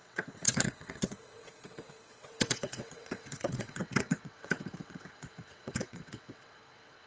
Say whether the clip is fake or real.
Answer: fake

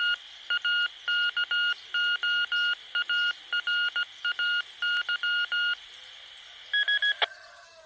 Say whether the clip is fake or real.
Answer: real